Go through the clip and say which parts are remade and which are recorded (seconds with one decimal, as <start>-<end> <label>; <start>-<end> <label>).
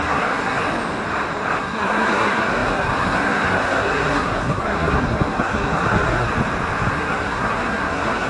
0.0-0.6 remade; 0.6-1.6 recorded; 1.6-6.3 remade; 6.3-6.9 recorded; 6.9-8.3 remade